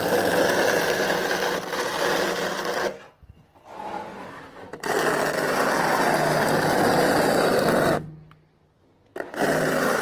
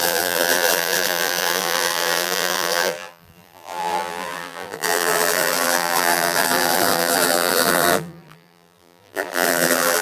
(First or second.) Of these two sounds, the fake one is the second